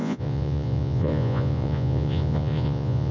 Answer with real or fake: fake